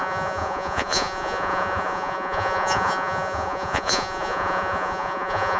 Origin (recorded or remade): remade